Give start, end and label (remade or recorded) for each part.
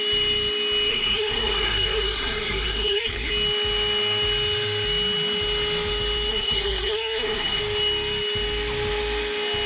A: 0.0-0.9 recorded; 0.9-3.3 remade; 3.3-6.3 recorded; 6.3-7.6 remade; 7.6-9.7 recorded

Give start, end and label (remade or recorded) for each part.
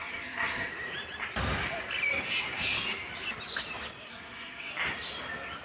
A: 0.0-0.7 remade; 0.7-4.1 recorded; 4.1-4.7 remade; 4.7-5.6 recorded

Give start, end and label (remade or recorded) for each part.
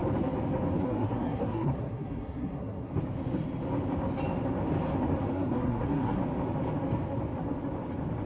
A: 0.0-0.8 recorded; 0.8-2.9 remade; 2.9-5.3 recorded; 5.3-6.2 remade; 6.2-8.3 recorded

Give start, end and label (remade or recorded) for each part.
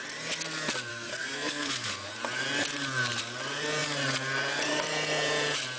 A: 0.0-0.9 recorded; 0.9-1.9 remade; 1.9-5.8 recorded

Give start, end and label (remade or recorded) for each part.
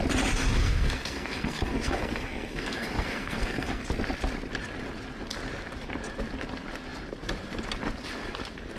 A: 0.0-0.6 recorded; 0.6-3.8 remade; 3.8-8.8 recorded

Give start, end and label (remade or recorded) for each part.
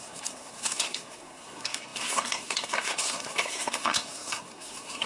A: 0.0-5.1 remade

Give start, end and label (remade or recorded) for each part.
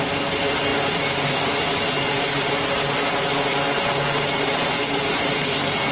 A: 0.0-5.9 recorded